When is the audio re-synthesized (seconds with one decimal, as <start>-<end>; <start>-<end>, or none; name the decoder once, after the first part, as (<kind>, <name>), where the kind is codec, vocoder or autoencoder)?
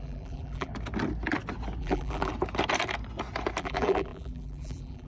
0.0-0.7 (vocoder, BigVGAN v2); 1.8-2.3; 3.6-5.1